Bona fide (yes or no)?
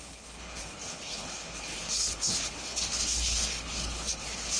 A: no